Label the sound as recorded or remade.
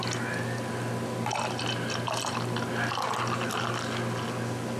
recorded